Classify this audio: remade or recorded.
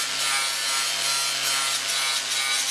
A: recorded